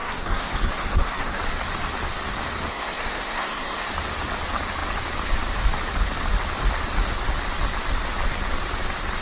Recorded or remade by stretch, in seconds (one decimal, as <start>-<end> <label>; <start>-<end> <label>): 0.0-1.4 remade; 1.4-2.7 recorded; 2.7-3.9 remade; 3.9-9.2 recorded